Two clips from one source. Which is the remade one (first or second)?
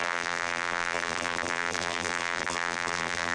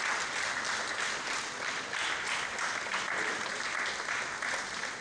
first